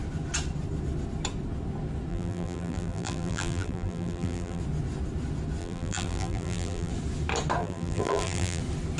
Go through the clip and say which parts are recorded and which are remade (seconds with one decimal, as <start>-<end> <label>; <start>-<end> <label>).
0.0-2.1 recorded; 2.1-4.6 remade; 4.6-5.6 recorded; 5.6-6.9 remade; 6.9-7.6 recorded; 7.6-8.6 remade; 8.6-9.0 recorded